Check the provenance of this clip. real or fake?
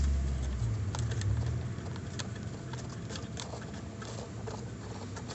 real